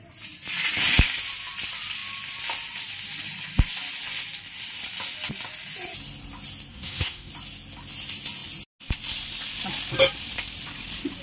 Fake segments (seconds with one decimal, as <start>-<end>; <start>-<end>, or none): 6.7-7.3